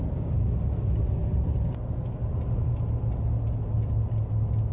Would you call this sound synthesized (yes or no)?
no